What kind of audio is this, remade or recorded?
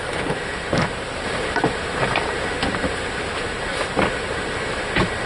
recorded